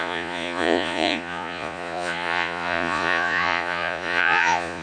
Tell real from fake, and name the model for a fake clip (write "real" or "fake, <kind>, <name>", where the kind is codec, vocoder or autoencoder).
fake, vocoder, Vocos